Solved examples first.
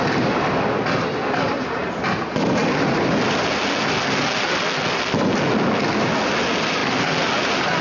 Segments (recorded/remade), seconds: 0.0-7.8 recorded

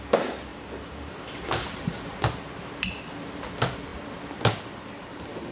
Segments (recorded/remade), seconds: 0.0-5.5 recorded

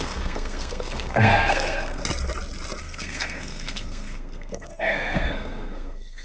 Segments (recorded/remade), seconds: 0.0-2.0 remade; 2.0-2.8 recorded; 2.8-6.2 remade

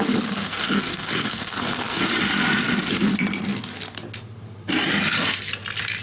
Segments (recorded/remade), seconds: 0.0-0.4 recorded; 0.4-2.0 remade; 2.0-6.0 recorded

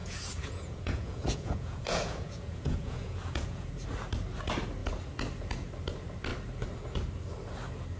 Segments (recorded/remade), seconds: 0.0-3.7 remade; 3.7-8.0 recorded